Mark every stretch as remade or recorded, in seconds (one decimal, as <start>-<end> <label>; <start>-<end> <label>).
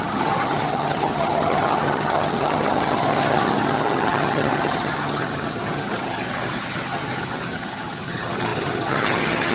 0.0-9.5 remade